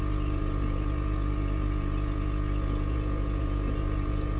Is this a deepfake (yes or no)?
yes